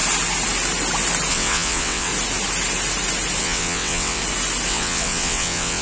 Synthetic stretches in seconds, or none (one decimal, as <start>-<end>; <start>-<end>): 1.3-2.1; 3.4-4.2; 4.7-5.8